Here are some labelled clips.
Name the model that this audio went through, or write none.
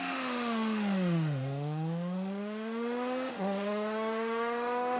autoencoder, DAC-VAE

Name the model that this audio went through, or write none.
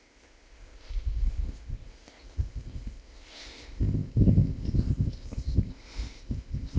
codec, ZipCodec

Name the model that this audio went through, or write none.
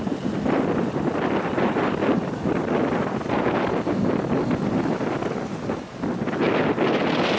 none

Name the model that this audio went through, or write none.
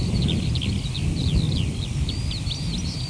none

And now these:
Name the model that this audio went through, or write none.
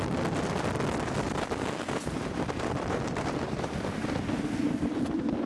none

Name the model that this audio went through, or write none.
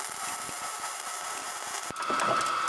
none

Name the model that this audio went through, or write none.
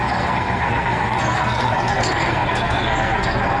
codec, SNAC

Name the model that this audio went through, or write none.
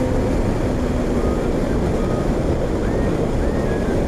none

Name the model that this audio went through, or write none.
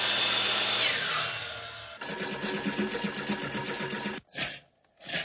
none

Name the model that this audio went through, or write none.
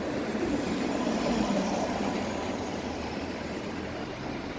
vocoder, BigVGAN v2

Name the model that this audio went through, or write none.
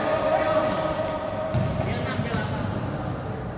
vocoder, BigVGAN v2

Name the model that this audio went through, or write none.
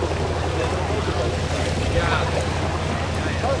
none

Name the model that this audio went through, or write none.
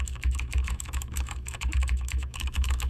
autoencoder, DAC-VAE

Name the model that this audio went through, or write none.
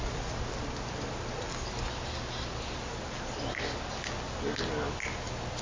none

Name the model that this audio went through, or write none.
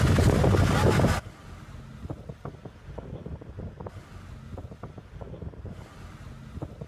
none